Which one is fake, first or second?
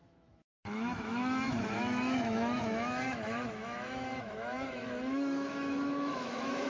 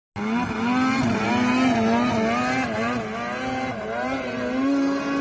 first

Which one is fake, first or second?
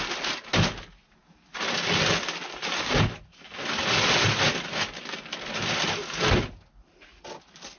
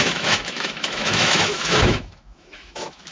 second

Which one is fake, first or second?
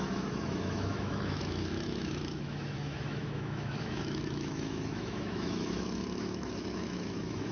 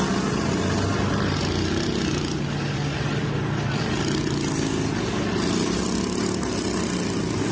first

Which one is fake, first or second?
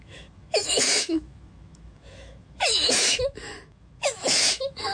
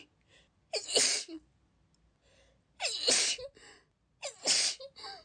first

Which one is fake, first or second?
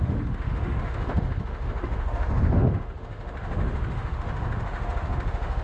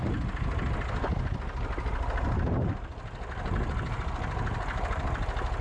first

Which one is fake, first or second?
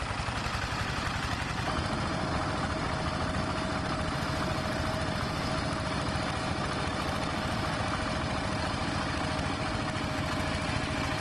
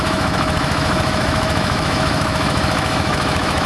second